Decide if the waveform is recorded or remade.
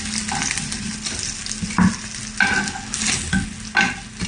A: recorded